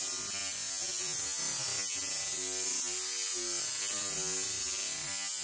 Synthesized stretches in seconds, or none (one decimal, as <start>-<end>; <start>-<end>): none